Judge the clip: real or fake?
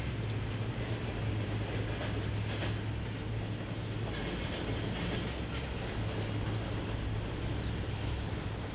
real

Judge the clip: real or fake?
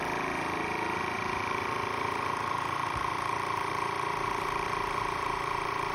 fake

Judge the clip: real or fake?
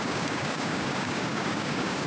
fake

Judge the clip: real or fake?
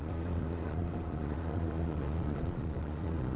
fake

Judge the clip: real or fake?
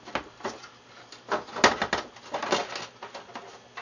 real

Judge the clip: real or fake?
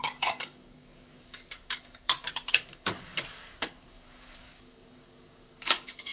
fake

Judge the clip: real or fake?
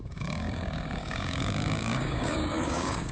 fake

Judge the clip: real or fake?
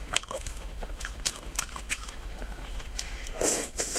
fake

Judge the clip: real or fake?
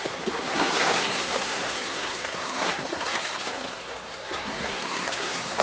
fake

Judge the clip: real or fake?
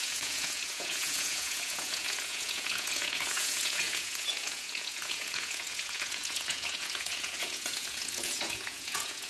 fake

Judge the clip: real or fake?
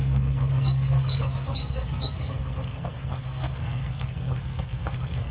fake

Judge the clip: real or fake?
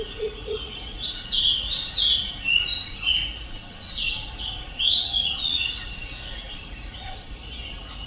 fake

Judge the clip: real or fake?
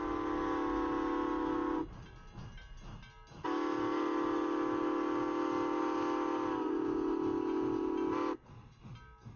real